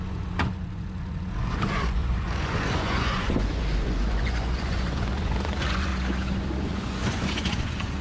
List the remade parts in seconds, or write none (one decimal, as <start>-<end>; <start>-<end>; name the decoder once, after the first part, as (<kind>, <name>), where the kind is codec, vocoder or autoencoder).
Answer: 0.0-5.9 (vocoder, Vocos); 6.6-8.0